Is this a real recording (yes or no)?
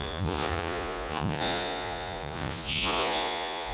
no